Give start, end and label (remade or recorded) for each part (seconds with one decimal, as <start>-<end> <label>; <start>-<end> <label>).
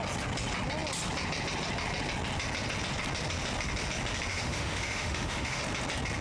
0.0-4.3 recorded; 4.3-5.6 remade; 5.6-6.2 recorded